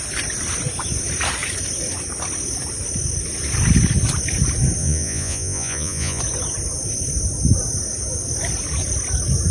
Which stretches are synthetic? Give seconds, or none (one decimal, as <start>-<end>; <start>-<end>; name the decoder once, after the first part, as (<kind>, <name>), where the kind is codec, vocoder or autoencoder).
4.8-6.2 (vocoder, Vocos)